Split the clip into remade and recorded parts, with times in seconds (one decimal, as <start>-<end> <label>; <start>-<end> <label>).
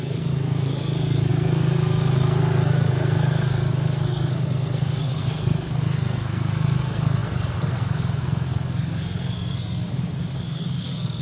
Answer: 0.0-11.2 remade